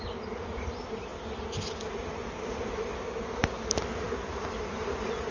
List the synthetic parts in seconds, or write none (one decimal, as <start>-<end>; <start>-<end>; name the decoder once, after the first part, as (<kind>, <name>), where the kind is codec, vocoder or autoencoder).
none